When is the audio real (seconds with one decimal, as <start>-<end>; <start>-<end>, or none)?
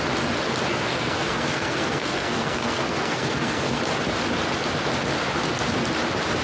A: 0.0-0.7; 3.8-6.4